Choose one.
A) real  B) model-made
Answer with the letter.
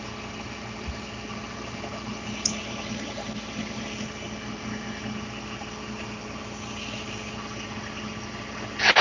A